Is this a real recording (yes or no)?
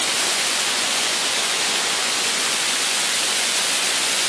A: no